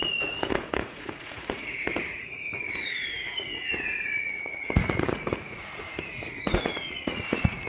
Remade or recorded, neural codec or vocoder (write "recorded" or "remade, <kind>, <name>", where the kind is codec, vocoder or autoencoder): remade, vocoder, Vocos